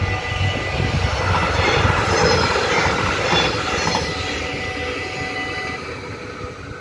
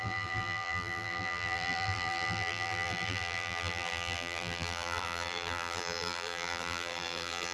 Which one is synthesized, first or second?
second